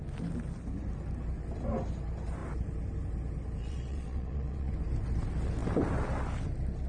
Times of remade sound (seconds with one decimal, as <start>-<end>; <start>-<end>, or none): 3.6-4.7